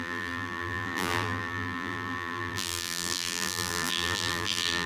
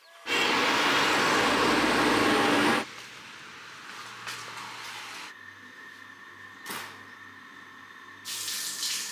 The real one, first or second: second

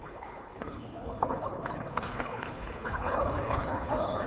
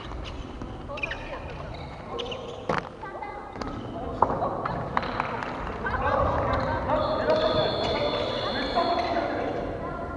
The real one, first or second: second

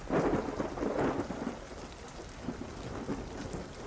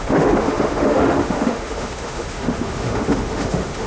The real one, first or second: first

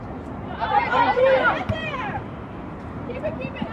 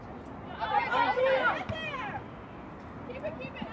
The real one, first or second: second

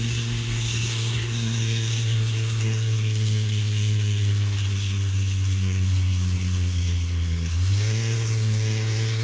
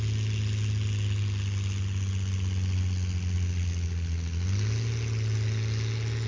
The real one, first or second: second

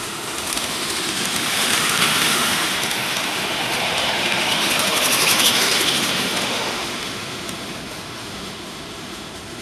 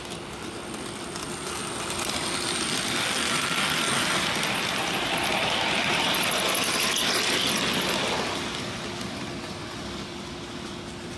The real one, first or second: second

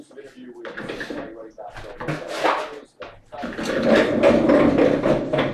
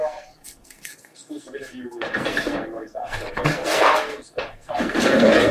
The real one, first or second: first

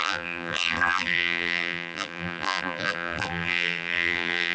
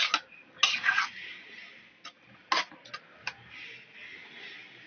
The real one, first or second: second